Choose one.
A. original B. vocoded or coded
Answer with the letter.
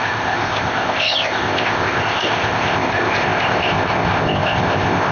B